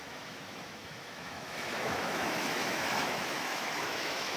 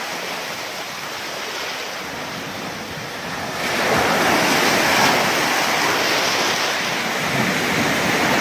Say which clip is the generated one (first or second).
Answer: first